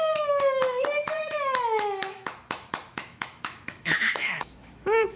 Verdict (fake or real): fake